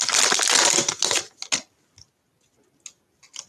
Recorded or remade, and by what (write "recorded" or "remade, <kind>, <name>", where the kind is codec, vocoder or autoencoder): recorded